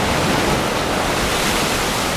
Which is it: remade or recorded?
recorded